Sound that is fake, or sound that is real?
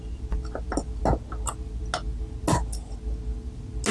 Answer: real